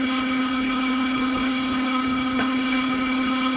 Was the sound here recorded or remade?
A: remade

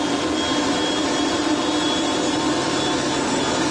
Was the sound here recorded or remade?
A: recorded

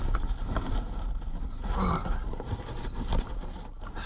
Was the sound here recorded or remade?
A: recorded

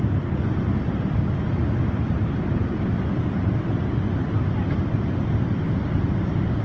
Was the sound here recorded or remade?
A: recorded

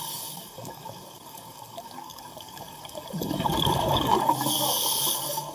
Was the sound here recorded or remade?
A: remade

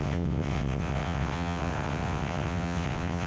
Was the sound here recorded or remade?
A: remade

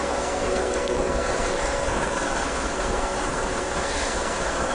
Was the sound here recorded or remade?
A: remade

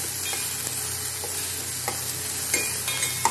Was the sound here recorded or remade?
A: recorded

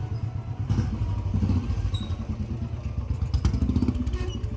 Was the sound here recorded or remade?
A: recorded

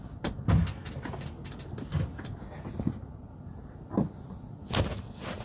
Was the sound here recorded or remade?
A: recorded